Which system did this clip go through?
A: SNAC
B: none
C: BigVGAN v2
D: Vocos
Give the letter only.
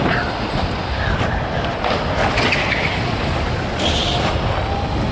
B